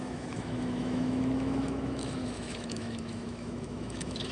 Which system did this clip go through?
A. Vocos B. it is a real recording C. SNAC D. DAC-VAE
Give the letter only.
D